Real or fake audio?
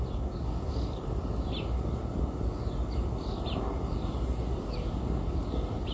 real